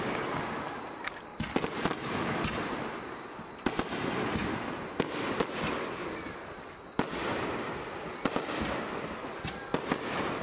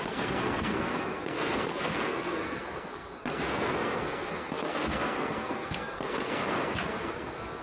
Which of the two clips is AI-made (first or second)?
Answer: second